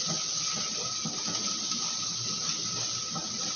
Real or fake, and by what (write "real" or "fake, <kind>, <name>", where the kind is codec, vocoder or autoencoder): real